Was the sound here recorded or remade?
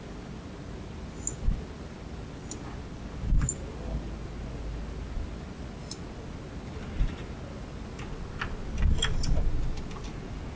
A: recorded